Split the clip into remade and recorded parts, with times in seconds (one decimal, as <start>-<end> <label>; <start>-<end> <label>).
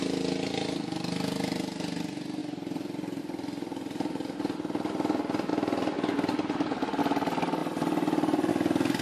0.0-2.4 recorded; 2.4-3.2 remade; 3.2-7.6 recorded; 7.6-8.5 remade; 8.5-9.0 recorded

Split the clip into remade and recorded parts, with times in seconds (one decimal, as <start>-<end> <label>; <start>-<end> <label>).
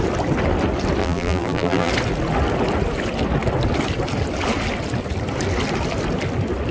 0.0-1.0 recorded; 1.0-1.9 remade; 1.9-6.7 recorded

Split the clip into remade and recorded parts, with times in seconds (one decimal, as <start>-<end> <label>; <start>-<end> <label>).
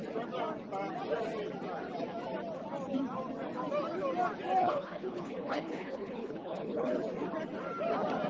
0.0-4.6 recorded; 4.6-6.9 remade; 6.9-8.3 recorded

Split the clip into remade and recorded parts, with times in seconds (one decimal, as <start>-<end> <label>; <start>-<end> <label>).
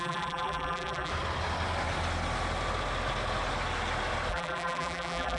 0.0-1.1 remade; 1.1-4.3 recorded; 4.3-5.4 remade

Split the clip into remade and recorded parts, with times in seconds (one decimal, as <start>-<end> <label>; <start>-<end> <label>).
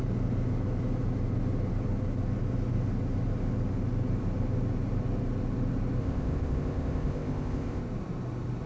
0.0-6.0 recorded; 6.0-7.8 remade; 7.8-8.7 recorded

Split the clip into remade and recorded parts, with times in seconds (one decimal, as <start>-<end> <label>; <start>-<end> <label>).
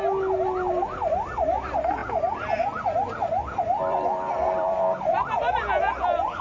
0.0-2.0 recorded; 2.0-5.8 remade; 5.8-6.4 recorded